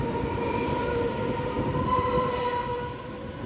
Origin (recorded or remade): recorded